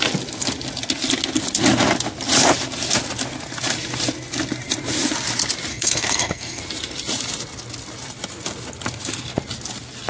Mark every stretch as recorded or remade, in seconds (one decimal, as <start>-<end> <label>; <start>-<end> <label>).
0.0-5.7 recorded; 5.7-6.6 remade; 6.6-10.1 recorded

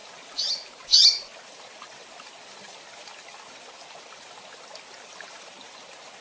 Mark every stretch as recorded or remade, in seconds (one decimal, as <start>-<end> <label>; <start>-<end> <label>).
0.0-6.2 recorded

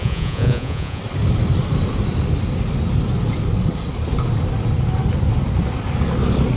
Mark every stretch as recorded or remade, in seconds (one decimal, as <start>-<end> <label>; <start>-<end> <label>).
0.0-1.0 remade; 1.0-6.6 recorded

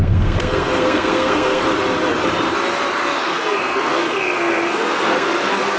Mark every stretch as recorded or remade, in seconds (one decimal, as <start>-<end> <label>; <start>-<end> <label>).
0.0-1.6 remade; 1.6-3.0 recorded; 3.0-5.8 remade